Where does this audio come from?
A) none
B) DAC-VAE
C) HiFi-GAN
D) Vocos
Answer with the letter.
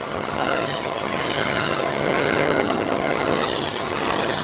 C